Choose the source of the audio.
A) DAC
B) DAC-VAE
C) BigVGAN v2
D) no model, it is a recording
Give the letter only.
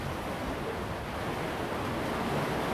D